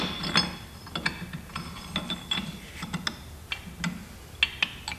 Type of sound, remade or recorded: recorded